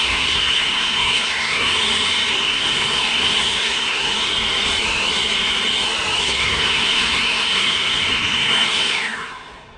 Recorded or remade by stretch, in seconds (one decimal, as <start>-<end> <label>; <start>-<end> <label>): 0.0-1.7 remade; 1.7-2.3 recorded; 2.3-4.3 remade; 4.3-6.2 recorded; 6.2-9.8 remade